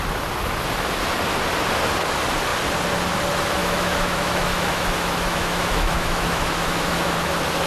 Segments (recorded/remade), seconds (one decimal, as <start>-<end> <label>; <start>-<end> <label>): 0.0-3.6 recorded; 3.6-7.3 remade; 7.3-7.7 recorded